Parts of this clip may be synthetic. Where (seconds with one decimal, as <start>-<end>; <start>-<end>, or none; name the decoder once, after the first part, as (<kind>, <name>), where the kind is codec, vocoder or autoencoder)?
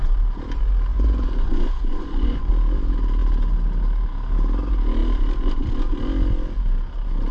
0.9-2.5 (vocoder, Vocos)